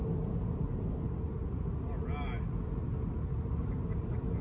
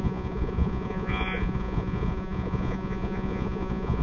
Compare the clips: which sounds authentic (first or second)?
first